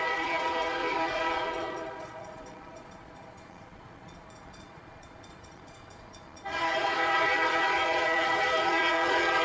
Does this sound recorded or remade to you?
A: remade